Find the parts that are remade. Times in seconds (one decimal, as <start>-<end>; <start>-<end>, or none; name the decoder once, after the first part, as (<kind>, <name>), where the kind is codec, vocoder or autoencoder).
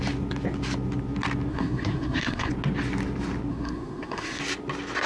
1.5-2.5 (codec, SNAC); 3.5-4.4